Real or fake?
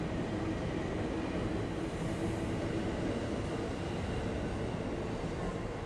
real